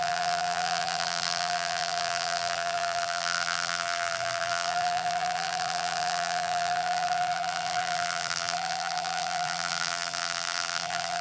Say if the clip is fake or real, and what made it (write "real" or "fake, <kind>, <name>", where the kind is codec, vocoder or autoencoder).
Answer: fake, vocoder, BigVGAN v2